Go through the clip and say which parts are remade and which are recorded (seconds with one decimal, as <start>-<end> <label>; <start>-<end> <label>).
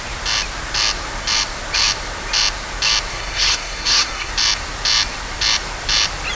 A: 0.0-3.1 recorded; 3.1-4.3 remade; 4.3-6.3 recorded